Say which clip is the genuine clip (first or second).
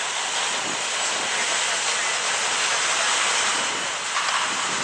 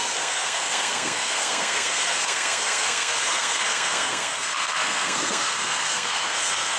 first